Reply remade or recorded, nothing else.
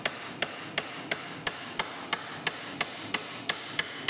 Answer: recorded